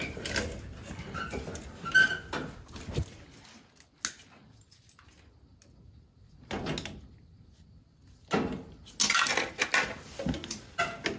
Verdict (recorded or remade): recorded